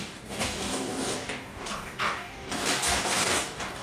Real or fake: fake